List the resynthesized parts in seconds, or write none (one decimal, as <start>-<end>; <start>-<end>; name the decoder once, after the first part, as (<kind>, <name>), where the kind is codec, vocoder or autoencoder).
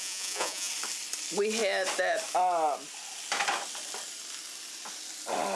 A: 0.0-0.7 (vocoder, Vocos)